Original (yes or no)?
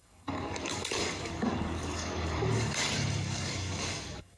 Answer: no